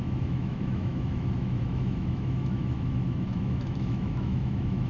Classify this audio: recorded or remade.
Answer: remade